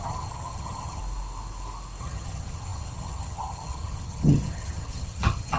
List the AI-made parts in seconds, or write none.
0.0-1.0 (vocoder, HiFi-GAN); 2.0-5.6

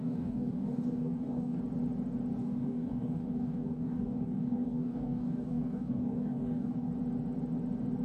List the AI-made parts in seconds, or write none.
0.0-1.6 (codec, DAC); 2.4-6.9

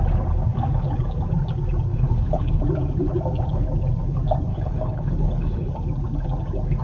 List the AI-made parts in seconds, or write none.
1.9-2.6 (codec, HILCodec); 4.5-5.7

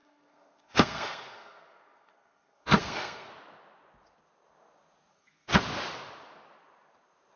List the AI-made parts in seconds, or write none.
0.0-3.3 (codec, SNAC); 5.1-5.6

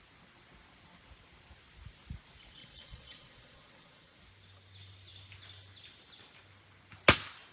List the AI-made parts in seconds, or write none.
2.6-4.2 (vocoder, Vocos)

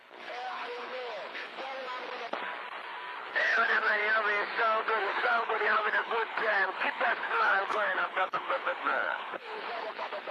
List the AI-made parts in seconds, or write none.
0.0-1.7 (codec, HILCodec); 3.2-4.0; 5.0-10.3